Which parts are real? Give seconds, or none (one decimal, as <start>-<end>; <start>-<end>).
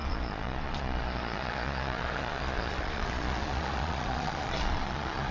none